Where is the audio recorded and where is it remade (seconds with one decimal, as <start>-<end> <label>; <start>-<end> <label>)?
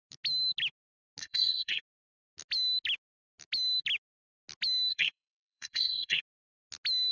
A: 0.0-1.2 recorded; 1.2-1.8 remade; 1.8-4.9 recorded; 4.9-6.2 remade; 6.2-7.1 recorded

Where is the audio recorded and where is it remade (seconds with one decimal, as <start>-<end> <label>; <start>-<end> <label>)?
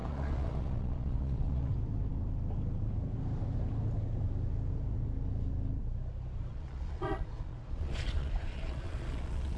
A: 0.0-1.7 remade; 1.7-6.5 recorded; 6.5-9.6 remade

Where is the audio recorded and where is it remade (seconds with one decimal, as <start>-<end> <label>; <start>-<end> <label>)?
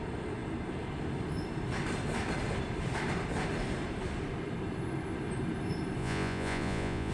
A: 0.0-6.0 recorded; 6.0-7.1 remade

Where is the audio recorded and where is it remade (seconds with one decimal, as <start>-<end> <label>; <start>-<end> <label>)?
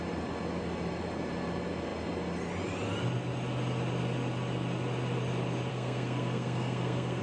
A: 0.0-5.7 recorded; 5.7-7.2 remade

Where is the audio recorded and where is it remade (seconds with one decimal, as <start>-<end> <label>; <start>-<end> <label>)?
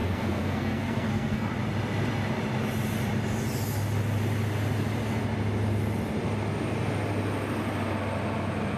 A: 0.0-1.5 remade; 1.5-8.8 recorded